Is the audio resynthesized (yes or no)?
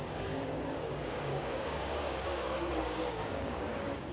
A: yes